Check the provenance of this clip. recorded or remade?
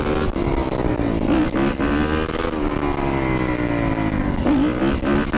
recorded